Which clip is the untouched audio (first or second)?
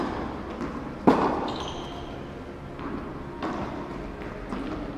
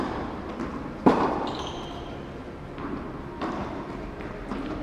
first